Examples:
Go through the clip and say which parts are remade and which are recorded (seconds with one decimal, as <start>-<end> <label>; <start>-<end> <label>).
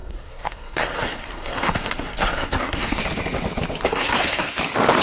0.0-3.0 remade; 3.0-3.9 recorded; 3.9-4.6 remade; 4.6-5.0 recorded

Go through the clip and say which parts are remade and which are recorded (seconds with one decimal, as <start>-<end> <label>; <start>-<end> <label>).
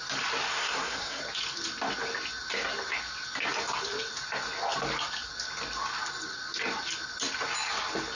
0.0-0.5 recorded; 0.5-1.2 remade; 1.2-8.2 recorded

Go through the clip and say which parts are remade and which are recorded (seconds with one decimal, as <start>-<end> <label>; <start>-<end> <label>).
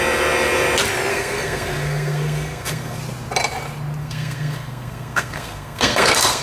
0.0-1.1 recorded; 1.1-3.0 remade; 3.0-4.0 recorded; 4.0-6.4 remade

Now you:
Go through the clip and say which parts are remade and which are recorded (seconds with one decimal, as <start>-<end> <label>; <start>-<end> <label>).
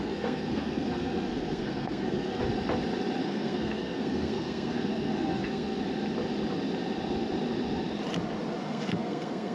0.0-2.4 remade; 2.4-3.2 recorded; 3.2-5.8 remade; 5.8-8.6 recorded; 8.6-9.5 remade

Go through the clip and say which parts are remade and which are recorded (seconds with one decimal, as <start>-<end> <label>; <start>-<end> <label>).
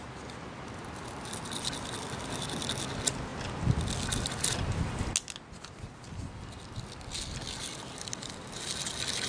0.0-9.3 recorded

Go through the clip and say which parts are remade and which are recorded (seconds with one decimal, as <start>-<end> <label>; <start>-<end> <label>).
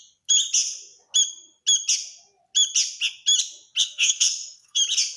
0.0-3.8 recorded; 3.8-4.8 remade; 4.8-5.2 recorded